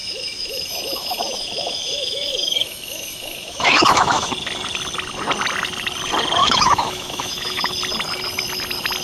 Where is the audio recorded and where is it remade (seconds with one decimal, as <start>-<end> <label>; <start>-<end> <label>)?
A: 0.0-4.3 remade; 4.3-6.4 recorded; 6.4-7.7 remade; 7.7-9.0 recorded